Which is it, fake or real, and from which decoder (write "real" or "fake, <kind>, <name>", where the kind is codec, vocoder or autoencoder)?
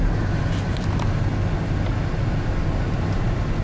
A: real